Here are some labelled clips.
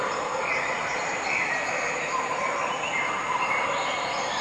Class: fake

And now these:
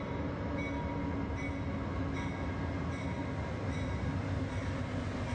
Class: real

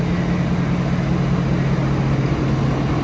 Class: real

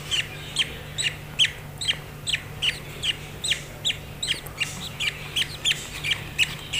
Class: real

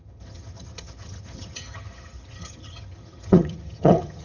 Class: fake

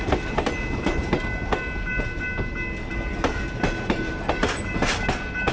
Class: real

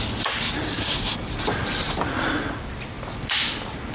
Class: real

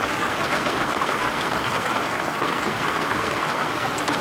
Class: fake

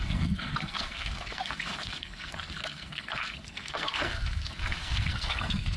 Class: fake